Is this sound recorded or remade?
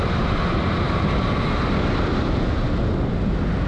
recorded